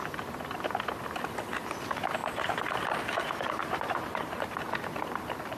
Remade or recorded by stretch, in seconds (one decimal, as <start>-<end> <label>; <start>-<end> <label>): 0.0-2.2 recorded; 2.2-3.0 remade; 3.0-3.6 recorded; 3.6-4.5 remade; 4.5-5.6 recorded